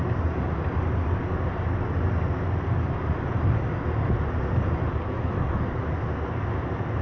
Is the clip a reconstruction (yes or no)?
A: no